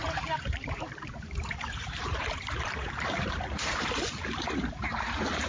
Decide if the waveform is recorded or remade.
remade